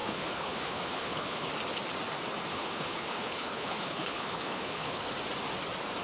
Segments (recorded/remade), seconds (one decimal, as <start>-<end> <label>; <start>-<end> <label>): 0.0-1.5 remade; 1.5-2.5 recorded; 2.5-5.1 remade; 5.1-6.0 recorded

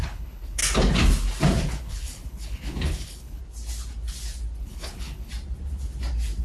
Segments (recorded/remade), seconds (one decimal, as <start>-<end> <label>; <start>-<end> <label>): 0.0-0.6 remade; 0.6-1.6 recorded; 1.6-3.4 remade; 3.4-4.6 recorded; 4.6-5.3 remade; 5.3-6.4 recorded

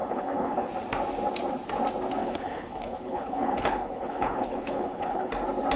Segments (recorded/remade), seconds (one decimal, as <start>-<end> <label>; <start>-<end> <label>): 0.0-0.7 remade; 0.7-2.2 recorded; 2.2-5.3 remade; 5.3-5.8 recorded